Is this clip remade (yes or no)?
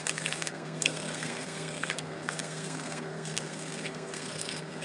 yes